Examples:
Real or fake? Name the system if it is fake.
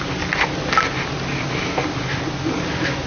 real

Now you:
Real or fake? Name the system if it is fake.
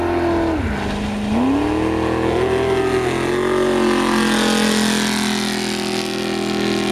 real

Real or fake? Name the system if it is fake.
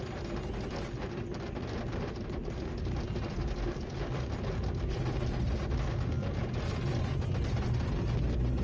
real